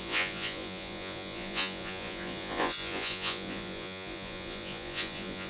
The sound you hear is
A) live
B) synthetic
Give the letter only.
B